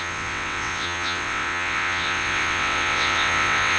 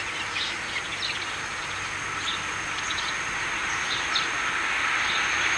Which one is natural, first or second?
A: second